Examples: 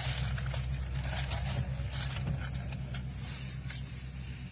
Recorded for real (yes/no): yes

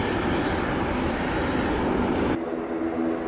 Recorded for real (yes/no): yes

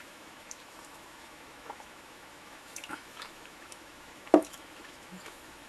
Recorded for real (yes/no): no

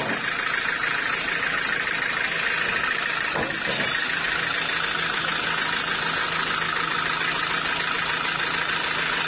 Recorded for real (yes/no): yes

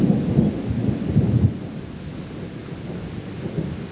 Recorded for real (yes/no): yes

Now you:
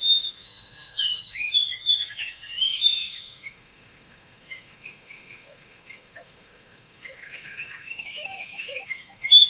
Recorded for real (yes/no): no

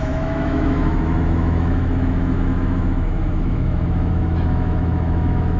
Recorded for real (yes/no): no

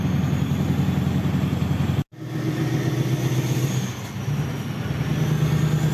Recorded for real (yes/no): yes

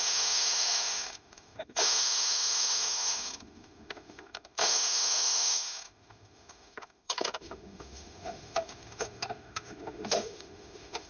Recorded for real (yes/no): no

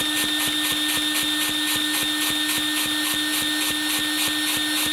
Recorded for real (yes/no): yes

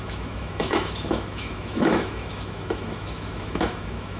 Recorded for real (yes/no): no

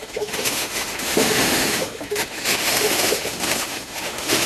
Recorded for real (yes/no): no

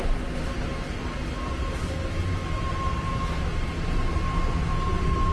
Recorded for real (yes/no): yes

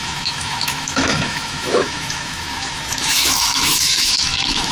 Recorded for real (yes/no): no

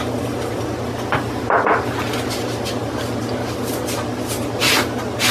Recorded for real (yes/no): yes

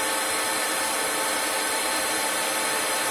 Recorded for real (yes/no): yes